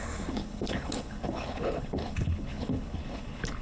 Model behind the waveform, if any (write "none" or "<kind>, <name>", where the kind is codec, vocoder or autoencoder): codec, HILCodec